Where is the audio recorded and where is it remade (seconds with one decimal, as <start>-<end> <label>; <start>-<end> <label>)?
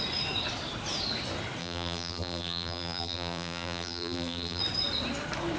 0.0-1.6 recorded; 1.6-4.6 remade; 4.6-5.6 recorded